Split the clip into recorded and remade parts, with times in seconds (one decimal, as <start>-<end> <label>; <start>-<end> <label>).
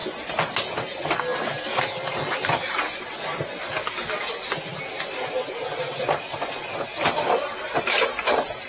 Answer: 0.0-8.7 recorded